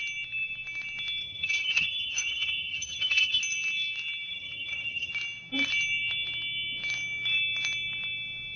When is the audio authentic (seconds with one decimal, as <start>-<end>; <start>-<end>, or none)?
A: 0.0-1.2; 3.4-4.3; 5.1-8.6